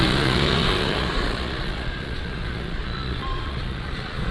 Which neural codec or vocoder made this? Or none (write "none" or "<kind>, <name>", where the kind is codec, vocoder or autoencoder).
vocoder, Vocos